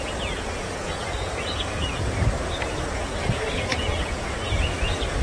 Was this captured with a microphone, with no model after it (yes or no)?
no